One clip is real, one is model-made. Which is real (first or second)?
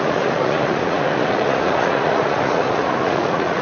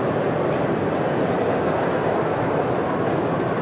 second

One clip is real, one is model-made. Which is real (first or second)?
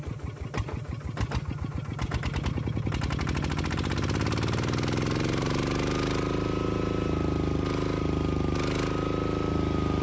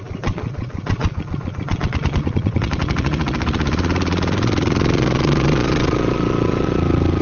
first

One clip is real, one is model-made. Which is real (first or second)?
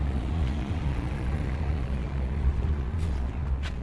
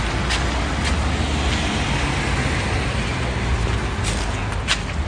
second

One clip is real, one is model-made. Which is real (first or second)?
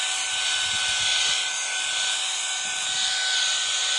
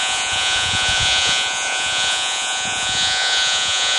first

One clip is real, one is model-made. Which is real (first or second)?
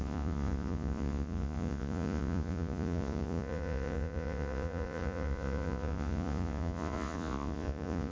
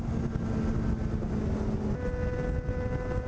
second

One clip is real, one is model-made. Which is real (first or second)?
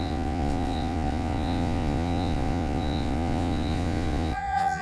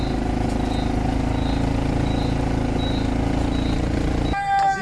second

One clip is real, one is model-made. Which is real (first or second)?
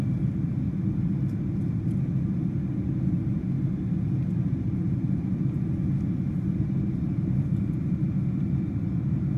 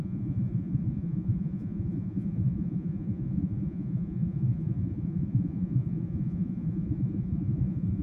first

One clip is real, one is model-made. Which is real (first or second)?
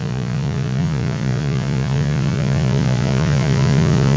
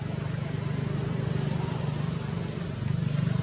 second